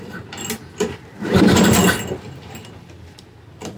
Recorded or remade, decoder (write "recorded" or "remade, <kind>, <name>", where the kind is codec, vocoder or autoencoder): recorded